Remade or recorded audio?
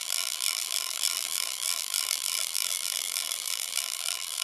remade